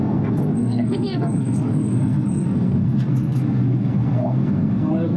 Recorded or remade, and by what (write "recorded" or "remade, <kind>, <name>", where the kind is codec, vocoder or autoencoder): remade, codec, SNAC